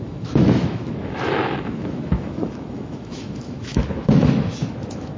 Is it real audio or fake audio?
fake